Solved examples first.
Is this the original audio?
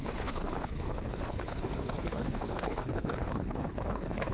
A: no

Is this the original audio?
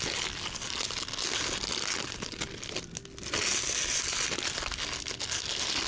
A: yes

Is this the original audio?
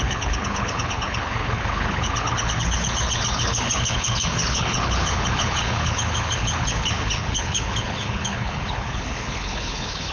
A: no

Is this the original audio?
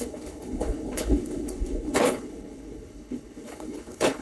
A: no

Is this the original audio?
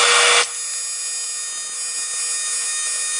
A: yes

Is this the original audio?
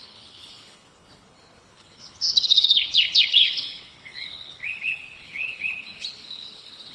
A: no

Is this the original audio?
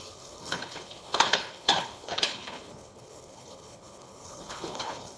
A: no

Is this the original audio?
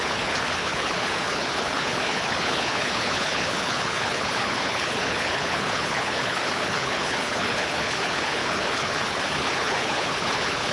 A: no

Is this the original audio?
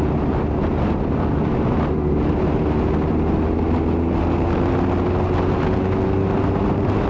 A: yes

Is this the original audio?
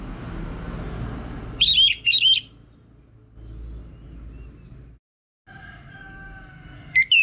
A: yes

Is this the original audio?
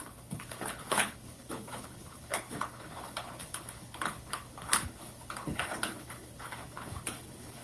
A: no